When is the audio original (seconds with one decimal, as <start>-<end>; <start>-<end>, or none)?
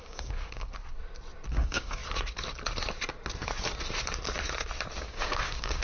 0.7-1.5; 2.0-5.0